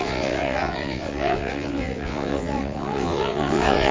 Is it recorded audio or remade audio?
remade